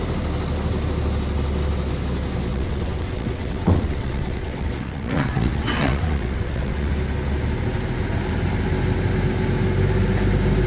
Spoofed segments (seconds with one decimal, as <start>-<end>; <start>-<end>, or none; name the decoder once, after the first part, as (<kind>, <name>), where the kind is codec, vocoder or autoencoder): 2.5-6.9 (vocoder, WaveNeXt)